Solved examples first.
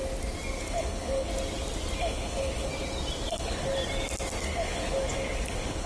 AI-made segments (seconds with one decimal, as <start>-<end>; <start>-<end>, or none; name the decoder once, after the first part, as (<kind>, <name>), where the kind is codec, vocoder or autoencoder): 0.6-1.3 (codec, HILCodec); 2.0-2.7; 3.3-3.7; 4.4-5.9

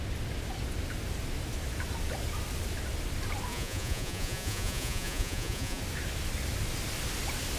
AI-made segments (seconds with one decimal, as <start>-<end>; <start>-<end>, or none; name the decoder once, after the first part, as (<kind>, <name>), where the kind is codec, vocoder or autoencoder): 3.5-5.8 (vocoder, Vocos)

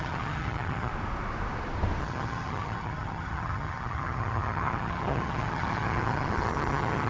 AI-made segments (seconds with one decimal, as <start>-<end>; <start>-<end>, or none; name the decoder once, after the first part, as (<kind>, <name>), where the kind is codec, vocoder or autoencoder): 0.0-0.9 (vocoder, HiFi-GAN); 2.0-7.1

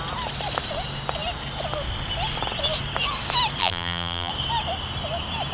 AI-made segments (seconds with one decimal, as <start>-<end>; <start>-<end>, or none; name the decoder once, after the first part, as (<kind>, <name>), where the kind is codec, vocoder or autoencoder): 3.6-4.3 (vocoder, BigVGAN v2)

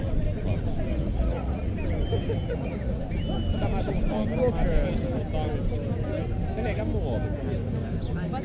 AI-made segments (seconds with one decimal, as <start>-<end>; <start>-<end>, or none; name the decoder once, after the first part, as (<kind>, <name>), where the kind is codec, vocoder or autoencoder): 0.9-1.7 (vocoder, Vocos); 2.4-3.0

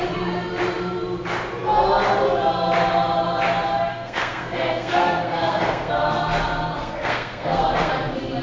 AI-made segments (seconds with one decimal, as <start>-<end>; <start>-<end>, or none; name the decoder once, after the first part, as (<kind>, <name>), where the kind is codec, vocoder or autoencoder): 3.9-5.9 (codec, SNAC); 6.8-7.9